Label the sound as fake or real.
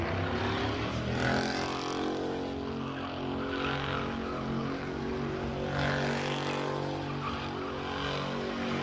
real